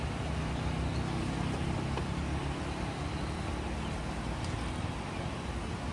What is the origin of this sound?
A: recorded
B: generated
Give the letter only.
A